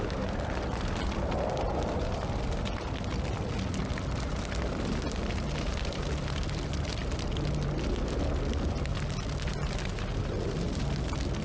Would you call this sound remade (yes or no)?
no